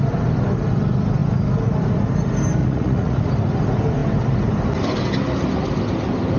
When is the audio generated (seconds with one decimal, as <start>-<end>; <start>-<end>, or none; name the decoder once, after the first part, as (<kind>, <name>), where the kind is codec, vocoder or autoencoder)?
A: 2.6-3.2 (vocoder, Vocos)